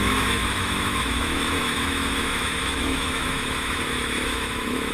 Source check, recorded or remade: remade